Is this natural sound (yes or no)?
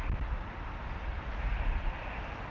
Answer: yes